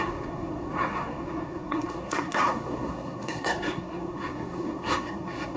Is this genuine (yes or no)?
no